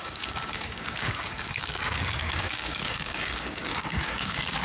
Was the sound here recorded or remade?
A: remade